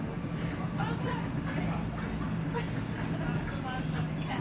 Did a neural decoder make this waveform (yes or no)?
no